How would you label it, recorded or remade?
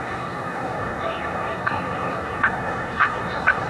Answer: remade